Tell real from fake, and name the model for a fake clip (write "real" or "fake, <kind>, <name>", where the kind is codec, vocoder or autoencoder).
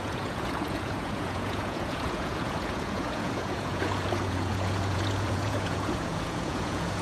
fake, vocoder, Vocos